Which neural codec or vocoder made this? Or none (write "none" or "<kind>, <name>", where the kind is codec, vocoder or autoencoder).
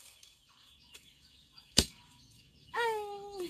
codec, DAC